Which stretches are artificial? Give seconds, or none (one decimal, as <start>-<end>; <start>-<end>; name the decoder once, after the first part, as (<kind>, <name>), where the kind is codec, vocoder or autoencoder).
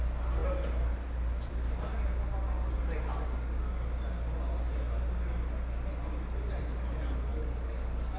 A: 7.3-8.2 (codec, DAC)